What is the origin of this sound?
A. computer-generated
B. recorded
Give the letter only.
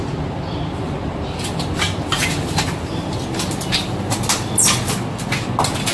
B